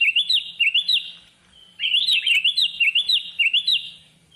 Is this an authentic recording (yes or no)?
yes